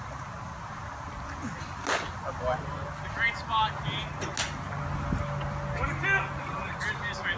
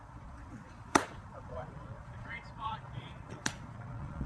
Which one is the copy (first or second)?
second